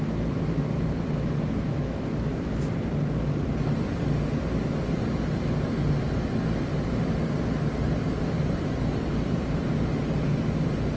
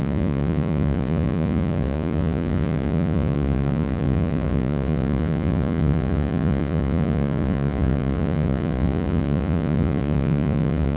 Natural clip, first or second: first